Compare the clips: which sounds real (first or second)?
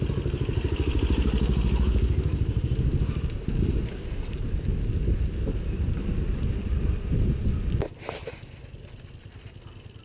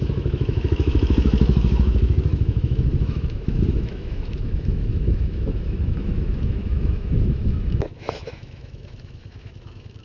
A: first